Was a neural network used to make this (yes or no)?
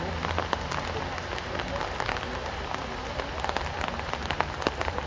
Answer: no